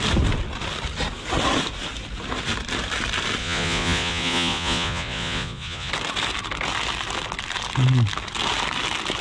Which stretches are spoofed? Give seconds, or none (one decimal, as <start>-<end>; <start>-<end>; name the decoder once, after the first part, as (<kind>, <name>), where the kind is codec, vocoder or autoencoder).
3.4-5.9 (vocoder, Vocos)